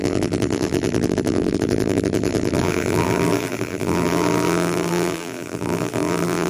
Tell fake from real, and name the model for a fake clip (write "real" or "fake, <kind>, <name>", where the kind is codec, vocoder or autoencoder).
fake, vocoder, BigVGAN v2